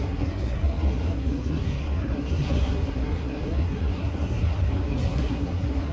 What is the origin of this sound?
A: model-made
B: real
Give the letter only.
A